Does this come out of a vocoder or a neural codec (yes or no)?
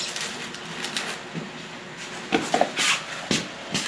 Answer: no